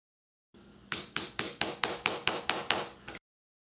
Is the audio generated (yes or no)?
yes